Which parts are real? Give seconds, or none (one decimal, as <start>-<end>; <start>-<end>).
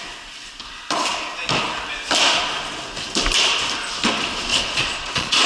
0.0-4.5